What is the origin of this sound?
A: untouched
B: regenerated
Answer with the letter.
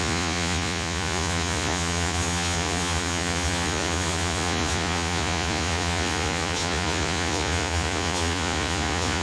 B